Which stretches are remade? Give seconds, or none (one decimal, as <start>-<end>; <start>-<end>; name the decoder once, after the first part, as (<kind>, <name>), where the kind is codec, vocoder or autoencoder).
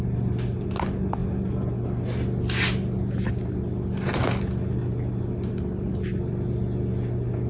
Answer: none